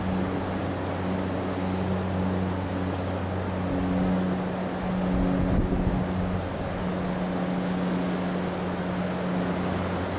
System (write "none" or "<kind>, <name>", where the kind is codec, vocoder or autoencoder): none